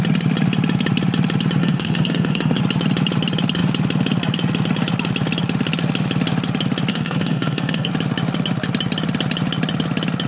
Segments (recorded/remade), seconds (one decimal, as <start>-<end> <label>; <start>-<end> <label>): 0.0-1.6 recorded; 1.6-2.6 remade; 2.6-6.9 recorded; 6.9-7.9 remade; 7.9-10.3 recorded